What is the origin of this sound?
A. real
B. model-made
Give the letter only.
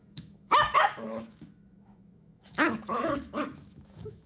B